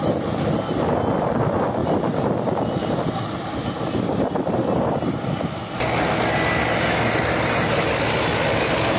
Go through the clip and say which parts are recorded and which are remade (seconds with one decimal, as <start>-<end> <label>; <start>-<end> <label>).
0.0-9.0 recorded